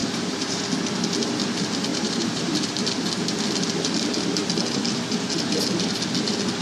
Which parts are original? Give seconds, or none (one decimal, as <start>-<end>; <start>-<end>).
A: 0.6-1.9; 2.7-6.6